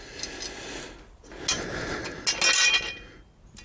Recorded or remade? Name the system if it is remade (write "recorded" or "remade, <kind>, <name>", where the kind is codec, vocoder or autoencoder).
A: recorded